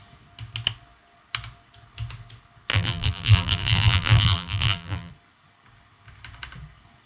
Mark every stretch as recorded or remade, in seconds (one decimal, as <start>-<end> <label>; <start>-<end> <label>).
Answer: 0.0-2.7 recorded; 2.7-5.1 remade; 5.1-7.1 recorded